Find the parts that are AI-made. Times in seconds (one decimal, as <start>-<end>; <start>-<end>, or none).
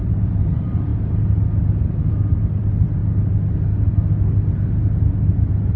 0.0-0.9; 2.6-3.0; 5.3-5.8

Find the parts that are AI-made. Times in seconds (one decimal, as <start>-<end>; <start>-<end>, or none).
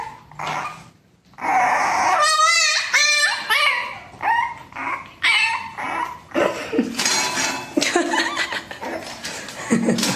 none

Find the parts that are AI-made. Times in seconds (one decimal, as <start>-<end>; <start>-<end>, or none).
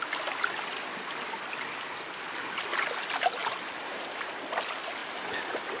3.4-4.5; 5.0-5.8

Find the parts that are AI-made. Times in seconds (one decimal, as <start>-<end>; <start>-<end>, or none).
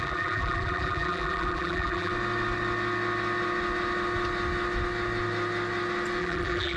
0.0-2.1; 6.2-6.8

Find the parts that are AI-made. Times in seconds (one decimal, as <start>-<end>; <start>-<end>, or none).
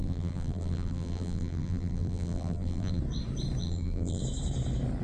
0.0-3.0; 3.6-4.2